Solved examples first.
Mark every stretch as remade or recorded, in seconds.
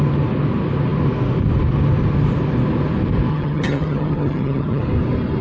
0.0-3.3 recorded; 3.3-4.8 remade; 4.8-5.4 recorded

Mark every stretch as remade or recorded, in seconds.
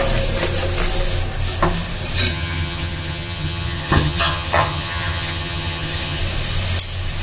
0.0-2.3 recorded; 2.3-6.2 remade; 6.2-7.2 recorded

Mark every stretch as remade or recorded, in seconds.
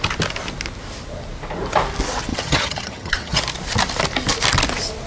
0.0-2.3 recorded; 2.3-3.4 remade; 3.4-5.1 recorded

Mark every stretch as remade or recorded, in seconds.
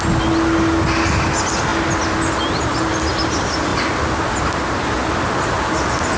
0.0-6.2 recorded